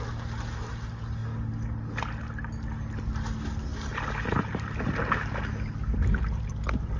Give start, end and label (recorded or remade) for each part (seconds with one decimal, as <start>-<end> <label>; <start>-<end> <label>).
0.0-7.0 recorded

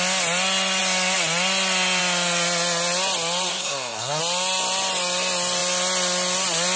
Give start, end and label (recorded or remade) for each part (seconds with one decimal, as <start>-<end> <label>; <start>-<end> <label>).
0.0-3.5 recorded; 3.5-4.2 remade; 4.2-6.8 recorded

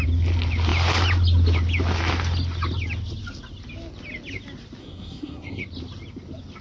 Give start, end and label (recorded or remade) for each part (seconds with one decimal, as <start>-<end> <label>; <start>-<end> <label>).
0.0-4.8 recorded; 4.8-5.6 remade; 5.6-6.6 recorded

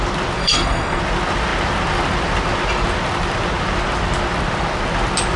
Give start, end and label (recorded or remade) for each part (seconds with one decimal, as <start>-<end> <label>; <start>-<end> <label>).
0.0-0.4 recorded; 0.4-1.0 remade; 1.0-5.4 recorded

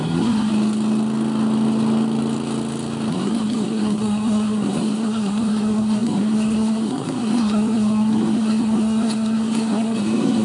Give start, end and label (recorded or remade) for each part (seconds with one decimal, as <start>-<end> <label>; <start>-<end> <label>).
0.0-0.5 remade; 0.5-3.1 recorded; 3.1-10.4 remade

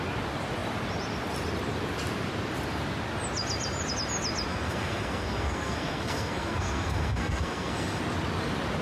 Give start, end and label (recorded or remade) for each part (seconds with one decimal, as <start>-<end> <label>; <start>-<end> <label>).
0.0-4.5 recorded; 4.5-8.0 remade; 8.0-8.8 recorded